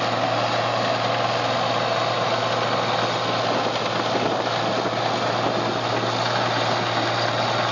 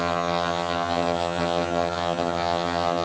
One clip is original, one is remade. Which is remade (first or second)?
second